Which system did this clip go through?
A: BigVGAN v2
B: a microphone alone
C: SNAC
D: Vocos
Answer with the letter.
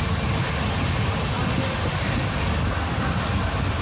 B